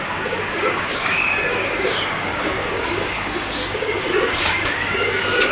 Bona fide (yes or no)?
no